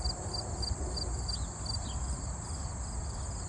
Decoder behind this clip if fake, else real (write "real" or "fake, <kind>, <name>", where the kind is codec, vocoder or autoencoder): real